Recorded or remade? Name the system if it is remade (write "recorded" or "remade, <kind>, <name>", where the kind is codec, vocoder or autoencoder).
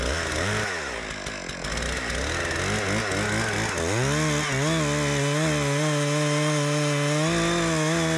recorded